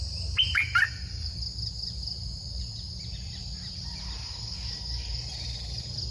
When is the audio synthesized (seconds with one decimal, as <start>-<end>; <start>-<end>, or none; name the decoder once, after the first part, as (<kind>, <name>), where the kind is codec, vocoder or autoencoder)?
none